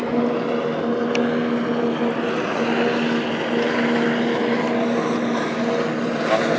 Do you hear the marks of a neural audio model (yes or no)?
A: no